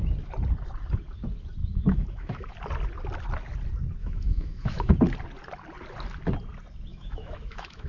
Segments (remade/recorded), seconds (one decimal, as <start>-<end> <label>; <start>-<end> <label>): 0.0-1.6 recorded; 1.6-2.5 remade; 2.5-4.0 recorded; 4.0-4.9 remade; 4.9-6.9 recorded; 6.9-7.9 remade